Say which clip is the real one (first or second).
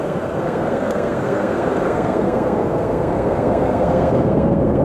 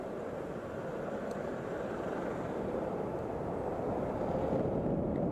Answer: second